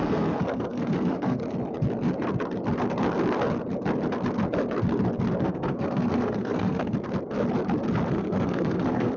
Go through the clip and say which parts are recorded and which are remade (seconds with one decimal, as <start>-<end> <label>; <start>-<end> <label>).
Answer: 0.0-1.4 remade; 1.4-5.4 recorded; 5.4-6.9 remade; 6.9-8.1 recorded; 8.1-9.2 remade